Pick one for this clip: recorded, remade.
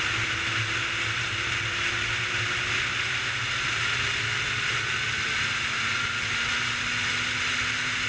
recorded